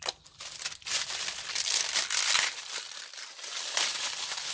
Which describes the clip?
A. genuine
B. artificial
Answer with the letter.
A